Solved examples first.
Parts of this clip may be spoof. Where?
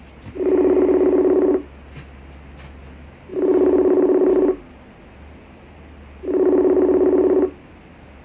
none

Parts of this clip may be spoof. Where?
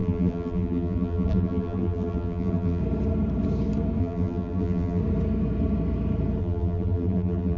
0.0-2.8; 4.0-5.0; 6.4-7.6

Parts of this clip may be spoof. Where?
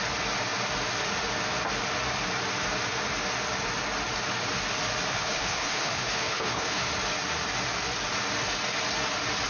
5.1-6.9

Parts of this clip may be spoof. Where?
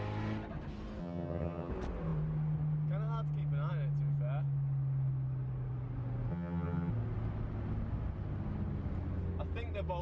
1.0-1.7; 6.3-6.9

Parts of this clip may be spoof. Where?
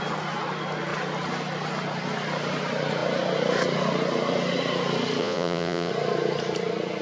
5.2-5.9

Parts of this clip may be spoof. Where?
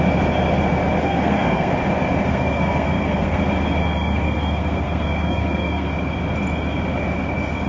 1.0-1.7; 2.2-3.4; 3.8-5.9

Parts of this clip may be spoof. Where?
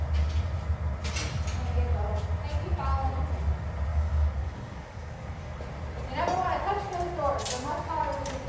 3.9-5.6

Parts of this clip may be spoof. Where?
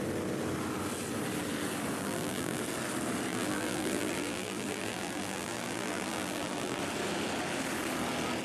2.0-2.6; 3.3-6.8